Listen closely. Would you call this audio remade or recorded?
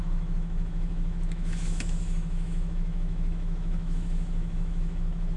remade